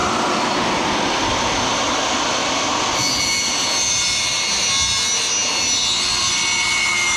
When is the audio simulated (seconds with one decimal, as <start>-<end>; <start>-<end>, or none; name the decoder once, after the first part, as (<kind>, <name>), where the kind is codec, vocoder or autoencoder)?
none